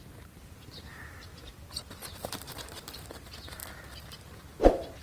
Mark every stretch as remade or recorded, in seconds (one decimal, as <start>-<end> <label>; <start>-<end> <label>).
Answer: 0.0-1.3 remade; 1.3-2.2 recorded; 2.2-3.6 remade; 3.6-4.3 recorded; 4.3-5.0 remade